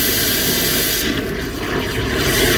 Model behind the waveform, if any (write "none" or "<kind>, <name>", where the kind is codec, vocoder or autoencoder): none